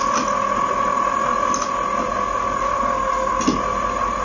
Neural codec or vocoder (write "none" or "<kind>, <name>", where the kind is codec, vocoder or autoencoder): none